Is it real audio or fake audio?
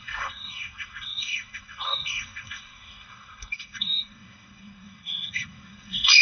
fake